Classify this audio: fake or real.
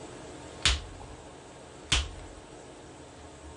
real